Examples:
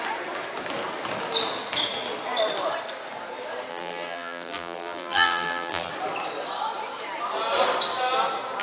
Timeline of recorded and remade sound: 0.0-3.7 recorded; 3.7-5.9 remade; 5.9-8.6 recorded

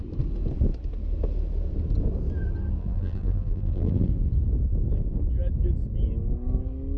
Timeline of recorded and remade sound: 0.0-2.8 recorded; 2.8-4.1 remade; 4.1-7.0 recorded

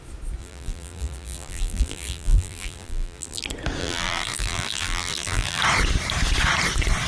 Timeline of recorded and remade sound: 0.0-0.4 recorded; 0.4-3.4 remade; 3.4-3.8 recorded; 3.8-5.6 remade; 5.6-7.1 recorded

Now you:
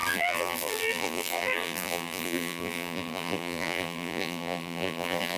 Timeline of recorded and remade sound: 0.0-5.4 remade

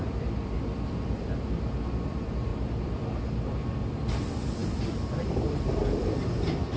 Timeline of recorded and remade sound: 0.0-2.5 remade; 2.5-3.8 recorded; 3.8-4.6 remade; 4.6-5.2 recorded; 5.2-6.8 remade